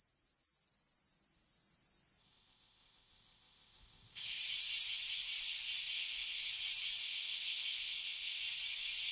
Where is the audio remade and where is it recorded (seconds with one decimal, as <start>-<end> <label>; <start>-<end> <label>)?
0.0-2.2 recorded; 2.2-4.4 remade; 4.4-5.9 recorded; 5.9-6.4 remade; 6.4-7.0 recorded; 7.0-8.4 remade; 8.4-9.1 recorded